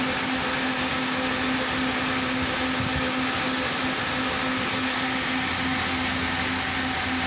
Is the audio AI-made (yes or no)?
no